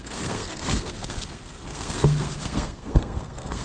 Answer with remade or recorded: remade